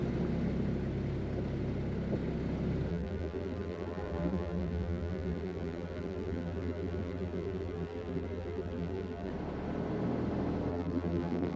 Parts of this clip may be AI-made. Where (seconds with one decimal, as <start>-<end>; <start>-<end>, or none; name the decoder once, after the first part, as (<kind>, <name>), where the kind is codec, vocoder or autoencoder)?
2.9-9.3 (vocoder, BigVGAN v2); 10.7-11.6